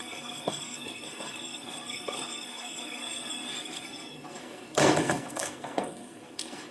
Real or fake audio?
fake